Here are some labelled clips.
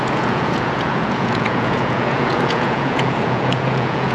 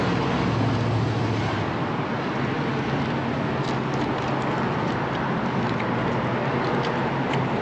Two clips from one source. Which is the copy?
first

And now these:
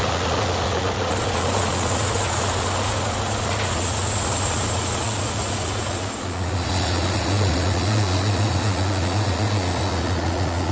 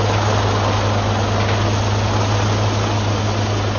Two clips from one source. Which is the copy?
first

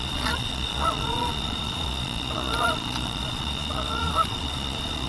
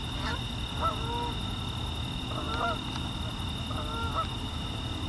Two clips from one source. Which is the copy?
first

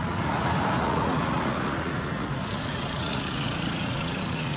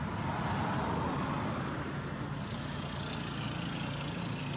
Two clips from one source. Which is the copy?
first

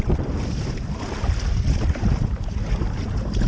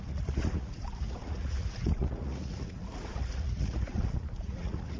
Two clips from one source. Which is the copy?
second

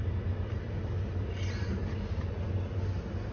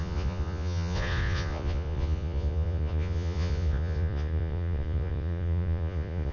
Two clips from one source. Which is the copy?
second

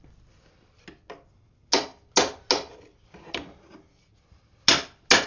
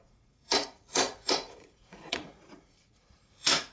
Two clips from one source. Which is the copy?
second